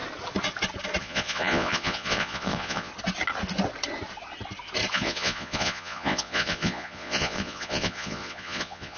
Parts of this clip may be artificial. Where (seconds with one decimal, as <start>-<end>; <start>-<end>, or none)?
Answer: 1.0-2.9; 4.9-9.0